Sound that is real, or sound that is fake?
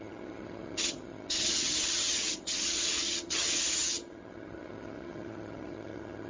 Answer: fake